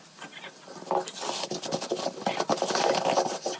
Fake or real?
fake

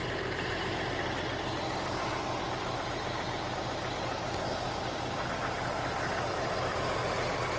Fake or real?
real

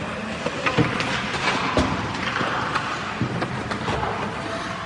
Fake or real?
real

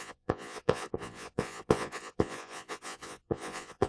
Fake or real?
fake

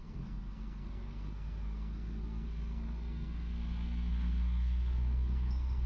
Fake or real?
fake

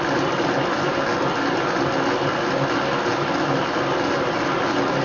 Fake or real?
real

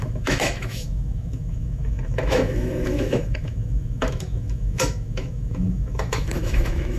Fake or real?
fake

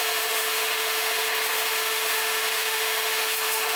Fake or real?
fake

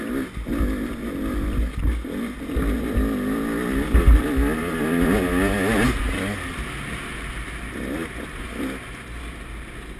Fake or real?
real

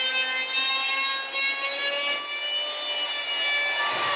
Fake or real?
real